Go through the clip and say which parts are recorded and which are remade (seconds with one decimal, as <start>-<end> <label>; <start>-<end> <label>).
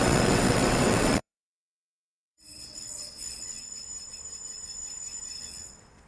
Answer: 0.0-3.6 remade; 3.6-5.4 recorded; 5.4-6.1 remade